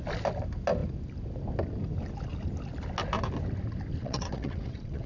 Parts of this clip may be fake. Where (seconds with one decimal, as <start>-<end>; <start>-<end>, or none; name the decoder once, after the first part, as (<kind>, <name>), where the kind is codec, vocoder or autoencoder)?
4.0-5.1 (vocoder, WaveNeXt)